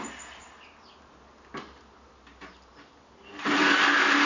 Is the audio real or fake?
real